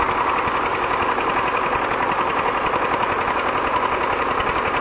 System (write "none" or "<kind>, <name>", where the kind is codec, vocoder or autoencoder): none